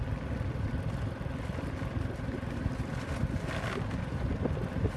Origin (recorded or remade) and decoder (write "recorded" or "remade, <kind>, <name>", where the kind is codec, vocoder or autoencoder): recorded